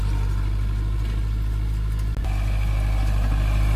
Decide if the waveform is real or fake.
real